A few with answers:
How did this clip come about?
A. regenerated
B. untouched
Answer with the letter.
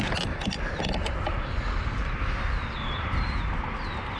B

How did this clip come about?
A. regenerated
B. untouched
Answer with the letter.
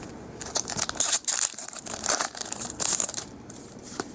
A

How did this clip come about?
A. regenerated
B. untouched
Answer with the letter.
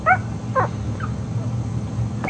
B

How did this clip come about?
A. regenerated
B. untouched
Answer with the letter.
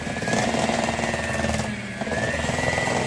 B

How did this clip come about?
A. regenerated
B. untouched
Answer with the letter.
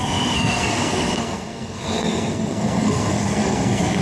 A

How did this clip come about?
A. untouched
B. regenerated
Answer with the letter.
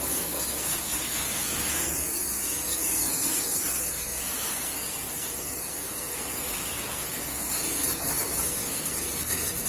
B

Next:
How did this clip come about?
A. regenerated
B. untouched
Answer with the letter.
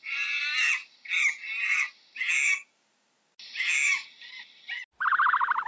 B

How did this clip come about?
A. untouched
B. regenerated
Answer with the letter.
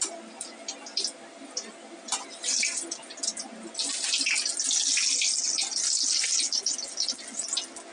A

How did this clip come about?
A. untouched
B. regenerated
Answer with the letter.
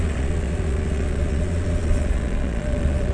B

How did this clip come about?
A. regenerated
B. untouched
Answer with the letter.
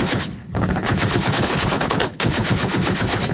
A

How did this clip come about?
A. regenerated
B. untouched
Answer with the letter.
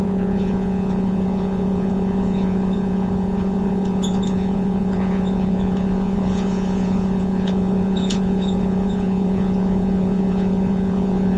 A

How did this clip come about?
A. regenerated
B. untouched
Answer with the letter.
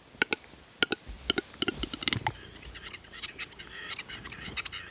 B